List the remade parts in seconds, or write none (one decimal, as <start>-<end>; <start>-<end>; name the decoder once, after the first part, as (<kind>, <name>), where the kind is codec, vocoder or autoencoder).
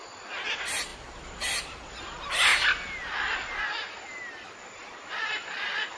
none